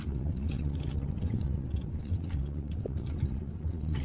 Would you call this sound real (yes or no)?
no